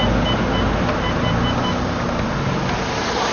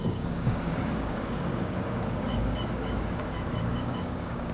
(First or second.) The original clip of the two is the first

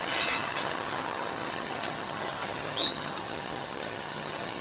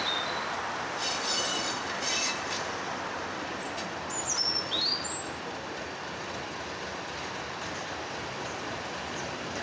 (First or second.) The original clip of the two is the second